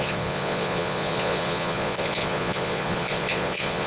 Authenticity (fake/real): fake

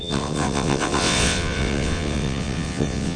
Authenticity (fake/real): fake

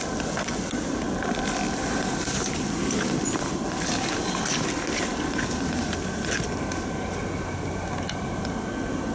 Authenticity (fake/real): real